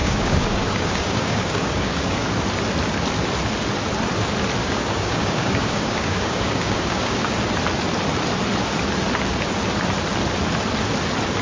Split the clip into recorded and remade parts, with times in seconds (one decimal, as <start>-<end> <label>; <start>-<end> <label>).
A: 0.0-2.3 remade; 2.3-4.6 recorded; 4.6-7.3 remade; 7.3-11.4 recorded